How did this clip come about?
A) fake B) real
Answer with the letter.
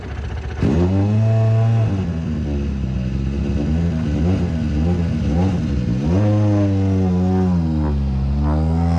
B